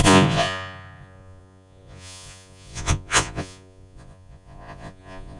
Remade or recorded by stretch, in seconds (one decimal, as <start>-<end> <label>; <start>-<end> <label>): 0.0-5.4 remade